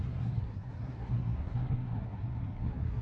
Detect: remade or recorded remade